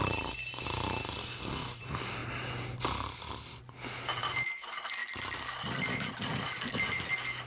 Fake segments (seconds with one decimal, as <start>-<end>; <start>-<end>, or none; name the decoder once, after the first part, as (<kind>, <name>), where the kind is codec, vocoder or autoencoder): 1.2-1.8 (codec, DAC)

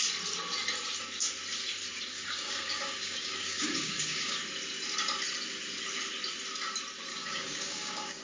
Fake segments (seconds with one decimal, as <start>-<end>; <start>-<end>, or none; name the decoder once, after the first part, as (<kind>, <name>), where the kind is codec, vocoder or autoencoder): 2.1-4.4 (codec, DAC); 7.1-8.2

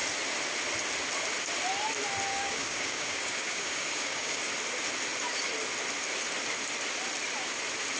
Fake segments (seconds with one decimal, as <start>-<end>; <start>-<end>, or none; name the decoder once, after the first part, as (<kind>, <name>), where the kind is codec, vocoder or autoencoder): 2.3-4.4 (codec, DAC)

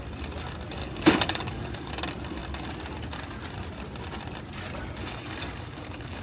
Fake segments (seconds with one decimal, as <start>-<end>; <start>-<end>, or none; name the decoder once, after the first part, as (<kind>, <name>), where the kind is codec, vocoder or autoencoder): 0.8-1.9 (codec, DAC); 5.0-6.2

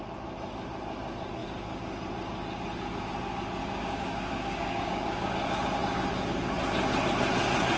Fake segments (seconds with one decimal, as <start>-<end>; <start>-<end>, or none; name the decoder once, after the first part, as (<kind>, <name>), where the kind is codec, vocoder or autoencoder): 3.6-5.3 (codec, DAC)